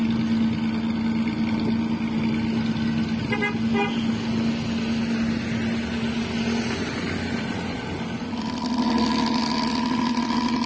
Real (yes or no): yes